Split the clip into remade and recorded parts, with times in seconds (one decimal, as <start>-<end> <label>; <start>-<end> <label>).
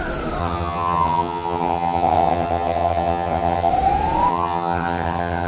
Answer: 0.0-0.4 recorded; 0.4-3.7 remade; 3.7-4.3 recorded; 4.3-5.5 remade